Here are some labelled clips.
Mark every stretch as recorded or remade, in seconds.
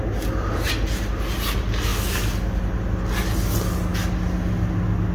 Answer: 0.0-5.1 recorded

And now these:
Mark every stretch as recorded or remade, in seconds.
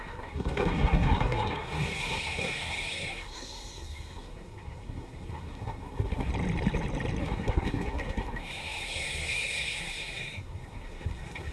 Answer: 0.0-6.3 remade; 6.3-7.2 recorded; 7.2-11.5 remade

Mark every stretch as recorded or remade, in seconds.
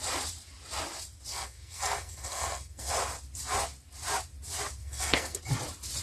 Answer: 0.0-1.3 recorded; 1.3-2.9 remade; 2.9-4.8 recorded; 4.8-5.4 remade; 5.4-6.0 recorded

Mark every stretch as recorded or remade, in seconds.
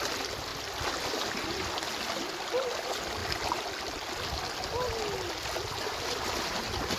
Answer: 0.0-7.0 recorded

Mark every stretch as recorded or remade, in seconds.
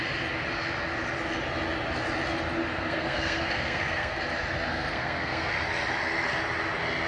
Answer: 0.0-2.7 recorded; 2.7-4.2 remade; 4.2-4.7 recorded; 4.7-5.5 remade; 5.5-7.1 recorded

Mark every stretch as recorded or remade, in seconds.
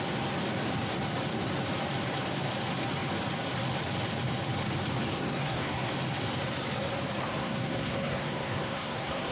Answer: 0.0-5.1 recorded; 5.1-5.9 remade; 5.9-7.4 recorded; 7.4-9.3 remade